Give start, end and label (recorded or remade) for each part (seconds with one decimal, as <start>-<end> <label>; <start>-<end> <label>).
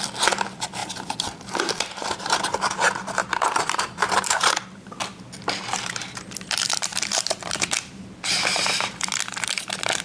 0.0-0.8 recorded; 0.8-2.6 remade; 2.6-3.2 recorded; 3.2-5.0 remade; 5.0-6.9 recorded; 6.9-7.7 remade; 7.7-10.0 recorded